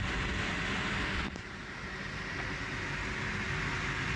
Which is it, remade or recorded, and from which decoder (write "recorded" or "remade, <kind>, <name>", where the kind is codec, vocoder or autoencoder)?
recorded